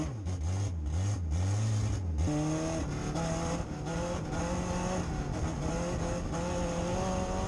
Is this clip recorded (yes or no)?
yes